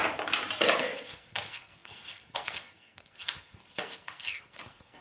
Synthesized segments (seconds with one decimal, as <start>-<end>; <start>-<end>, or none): 0.8-5.0